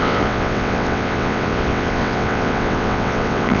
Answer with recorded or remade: remade